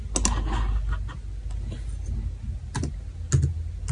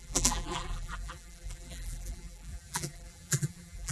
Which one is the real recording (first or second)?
first